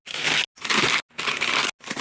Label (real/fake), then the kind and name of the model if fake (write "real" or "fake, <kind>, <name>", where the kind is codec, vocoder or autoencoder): real